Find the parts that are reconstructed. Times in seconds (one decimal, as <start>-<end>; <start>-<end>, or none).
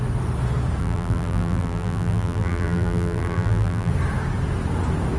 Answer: 0.8-3.9